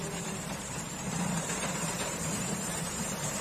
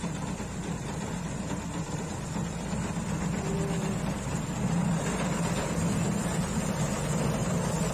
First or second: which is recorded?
second